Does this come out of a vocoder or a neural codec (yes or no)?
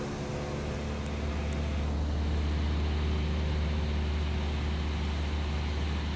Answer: no